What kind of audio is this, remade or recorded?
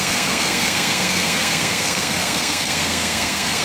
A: remade